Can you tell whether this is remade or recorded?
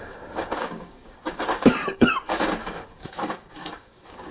remade